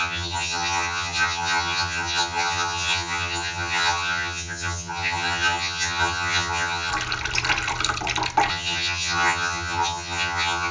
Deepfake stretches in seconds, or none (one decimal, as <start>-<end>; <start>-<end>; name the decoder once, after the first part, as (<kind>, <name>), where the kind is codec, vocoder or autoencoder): 0.0-6.9 (vocoder, HiFi-GAN); 8.5-10.7